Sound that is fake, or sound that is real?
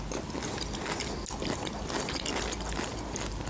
real